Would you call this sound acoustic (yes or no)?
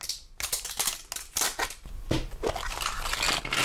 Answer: yes